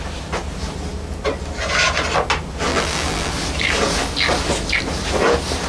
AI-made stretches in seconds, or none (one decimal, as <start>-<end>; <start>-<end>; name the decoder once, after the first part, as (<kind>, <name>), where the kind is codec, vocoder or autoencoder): 2.7-3.3 (vocoder, BigVGAN v2)

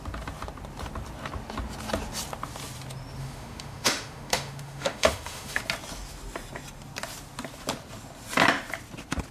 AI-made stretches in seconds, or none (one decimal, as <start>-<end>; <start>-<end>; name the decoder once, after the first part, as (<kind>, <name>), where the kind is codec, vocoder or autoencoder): 3.2-5.6 (autoencoder, DAC-VAE)

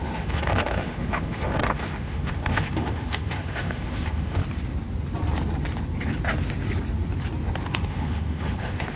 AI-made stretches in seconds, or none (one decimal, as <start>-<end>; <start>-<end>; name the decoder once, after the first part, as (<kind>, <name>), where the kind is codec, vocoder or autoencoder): 0.0-4.4 (autoencoder, DAC-VAE); 7.7-9.0

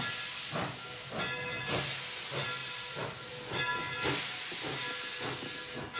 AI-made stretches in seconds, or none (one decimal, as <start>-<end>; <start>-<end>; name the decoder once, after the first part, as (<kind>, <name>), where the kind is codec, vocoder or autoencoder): 2.6-3.3 (vocoder, BigVGAN v2)

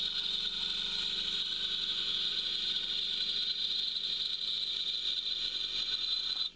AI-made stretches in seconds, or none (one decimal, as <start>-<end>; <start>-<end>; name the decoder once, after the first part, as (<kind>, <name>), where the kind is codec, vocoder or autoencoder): none